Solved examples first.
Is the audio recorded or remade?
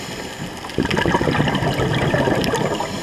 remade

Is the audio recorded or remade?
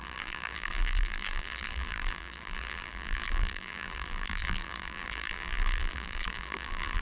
remade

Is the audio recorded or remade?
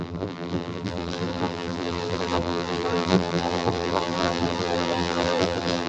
remade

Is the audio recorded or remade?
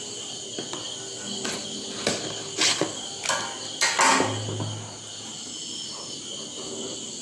recorded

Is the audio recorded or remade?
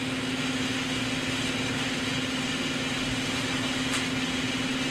recorded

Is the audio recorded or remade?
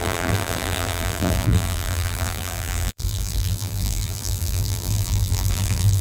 remade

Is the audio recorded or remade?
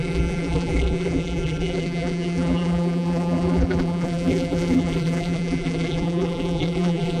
remade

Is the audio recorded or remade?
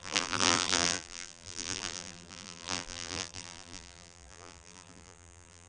remade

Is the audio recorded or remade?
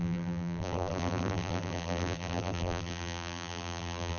remade